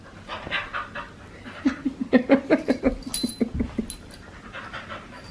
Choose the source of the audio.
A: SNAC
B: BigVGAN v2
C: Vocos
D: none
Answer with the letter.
D